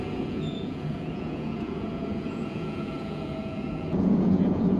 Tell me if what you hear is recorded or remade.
remade